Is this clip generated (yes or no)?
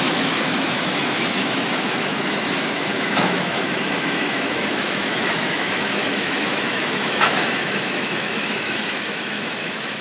yes